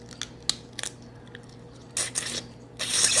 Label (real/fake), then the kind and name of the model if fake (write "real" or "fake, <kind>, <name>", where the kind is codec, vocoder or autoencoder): real